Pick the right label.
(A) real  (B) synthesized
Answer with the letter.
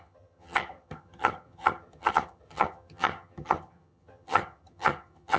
B